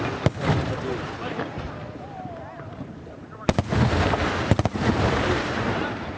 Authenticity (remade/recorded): remade